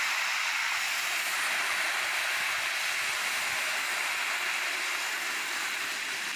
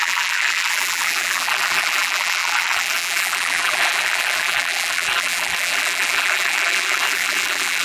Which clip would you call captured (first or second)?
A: first